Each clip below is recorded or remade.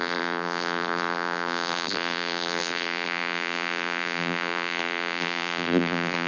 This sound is remade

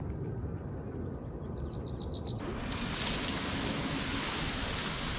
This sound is recorded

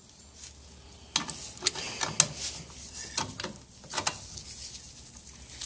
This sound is recorded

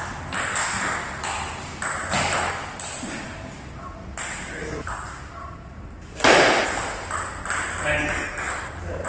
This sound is recorded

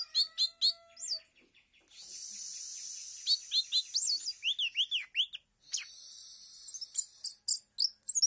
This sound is recorded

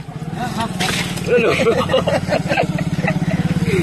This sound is recorded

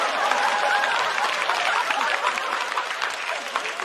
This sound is recorded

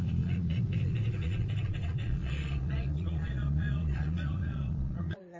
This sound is remade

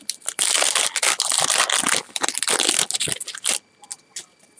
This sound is recorded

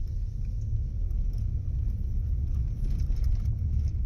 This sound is recorded